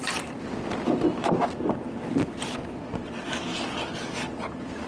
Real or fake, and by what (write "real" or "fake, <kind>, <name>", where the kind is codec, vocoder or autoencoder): fake, vocoder, BigVGAN v2